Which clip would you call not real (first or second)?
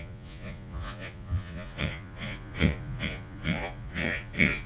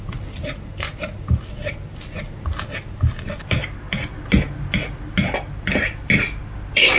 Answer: first